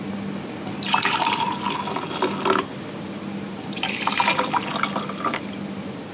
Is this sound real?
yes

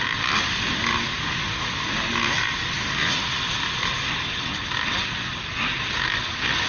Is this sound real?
yes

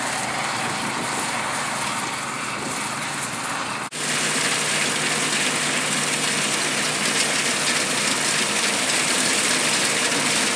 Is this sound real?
yes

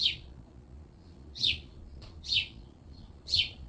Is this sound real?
no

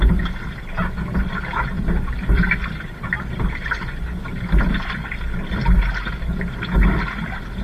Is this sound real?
yes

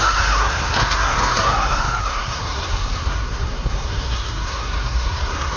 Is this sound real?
no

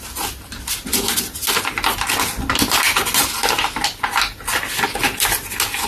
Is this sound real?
yes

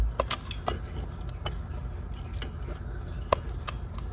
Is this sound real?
yes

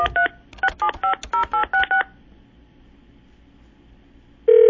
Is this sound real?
yes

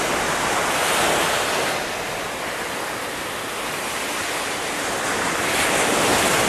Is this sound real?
yes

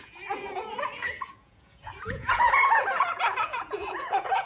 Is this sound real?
no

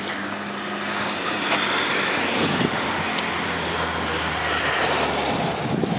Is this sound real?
yes